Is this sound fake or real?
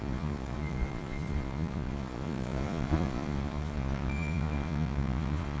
fake